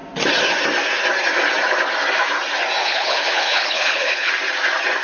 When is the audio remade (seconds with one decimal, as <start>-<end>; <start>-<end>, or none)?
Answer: 2.8-4.3